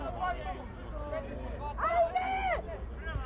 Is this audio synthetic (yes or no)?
no